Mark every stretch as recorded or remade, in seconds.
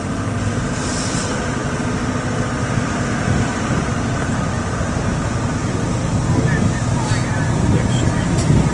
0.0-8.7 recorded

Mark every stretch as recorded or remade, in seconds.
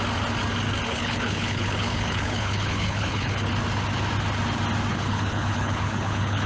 0.0-0.9 recorded; 0.9-3.5 remade; 3.5-4.9 recorded; 4.9-6.5 remade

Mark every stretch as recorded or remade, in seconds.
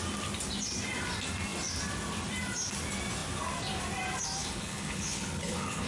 0.0-4.4 recorded; 4.4-5.9 remade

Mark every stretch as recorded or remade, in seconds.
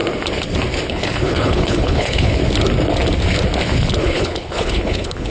0.0-0.9 recorded; 0.9-2.4 remade; 2.4-4.0 recorded; 4.0-5.3 remade